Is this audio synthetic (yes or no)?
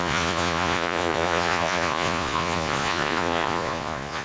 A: yes